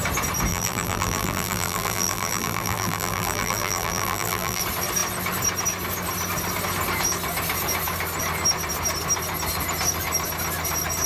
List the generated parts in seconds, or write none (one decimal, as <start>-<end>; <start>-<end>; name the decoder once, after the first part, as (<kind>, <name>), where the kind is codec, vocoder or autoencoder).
0.5-4.6 (vocoder, BigVGAN v2)